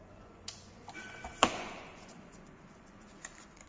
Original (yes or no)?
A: no